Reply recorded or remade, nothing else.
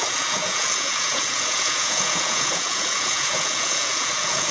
remade